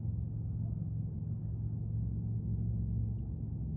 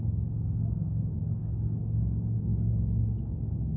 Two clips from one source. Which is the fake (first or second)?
second